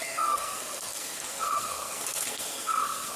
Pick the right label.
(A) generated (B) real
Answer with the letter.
A